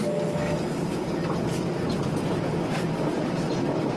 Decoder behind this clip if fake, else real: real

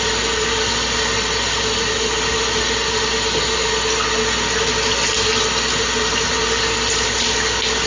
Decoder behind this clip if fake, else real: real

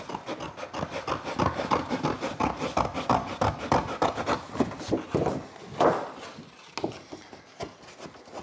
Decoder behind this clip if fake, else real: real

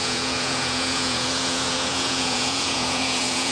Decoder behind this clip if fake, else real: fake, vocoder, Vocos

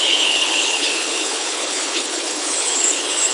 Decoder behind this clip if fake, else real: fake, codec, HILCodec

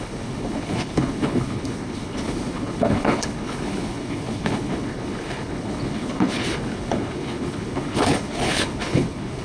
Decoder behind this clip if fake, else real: fake, codec, HILCodec